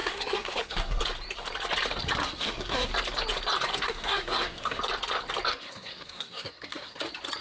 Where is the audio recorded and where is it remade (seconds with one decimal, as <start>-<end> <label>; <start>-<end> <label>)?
0.0-1.0 remade; 1.0-2.2 recorded; 2.2-2.9 remade; 2.9-3.7 recorded; 3.7-4.8 remade; 4.8-5.5 recorded; 5.5-7.0 remade; 7.0-7.4 recorded

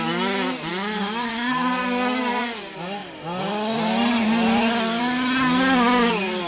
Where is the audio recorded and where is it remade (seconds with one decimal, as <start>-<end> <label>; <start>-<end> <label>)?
0.0-6.5 recorded

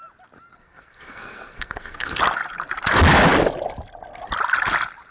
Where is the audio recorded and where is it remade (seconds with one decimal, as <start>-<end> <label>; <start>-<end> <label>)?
0.0-0.5 recorded; 0.5-2.2 remade; 2.2-5.1 recorded

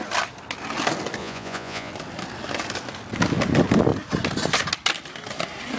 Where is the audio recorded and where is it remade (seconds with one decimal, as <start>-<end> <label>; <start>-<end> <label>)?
0.0-1.2 recorded; 1.2-1.9 remade; 1.9-5.8 recorded

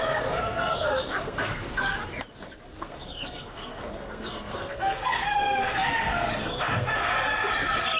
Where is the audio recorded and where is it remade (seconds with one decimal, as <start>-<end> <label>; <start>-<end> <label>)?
0.0-2.0 remade; 2.0-2.8 recorded; 2.8-7.1 remade; 7.1-8.0 recorded

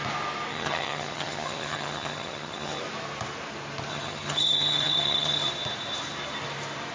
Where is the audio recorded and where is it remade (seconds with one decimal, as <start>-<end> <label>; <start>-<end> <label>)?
0.0-0.5 recorded; 0.5-2.8 remade; 2.8-3.9 recorded; 3.9-5.5 remade; 5.5-6.9 recorded

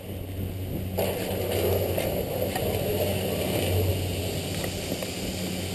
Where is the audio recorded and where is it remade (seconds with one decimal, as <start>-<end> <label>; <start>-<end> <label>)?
0.0-5.7 recorded

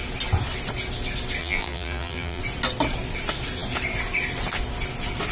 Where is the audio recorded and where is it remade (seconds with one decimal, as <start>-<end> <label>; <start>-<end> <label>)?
0.0-1.4 recorded; 1.4-2.4 remade; 2.4-5.3 recorded